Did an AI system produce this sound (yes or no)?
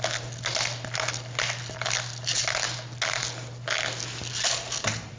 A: no